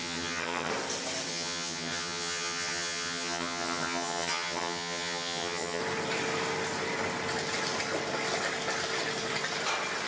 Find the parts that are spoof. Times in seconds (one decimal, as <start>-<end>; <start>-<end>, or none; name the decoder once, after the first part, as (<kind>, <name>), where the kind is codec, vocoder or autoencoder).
0.0-0.7 (vocoder, HiFi-GAN); 1.3-5.8